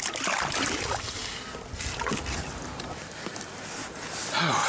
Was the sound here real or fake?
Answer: real